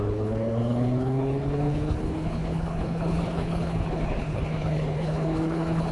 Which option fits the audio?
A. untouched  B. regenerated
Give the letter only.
B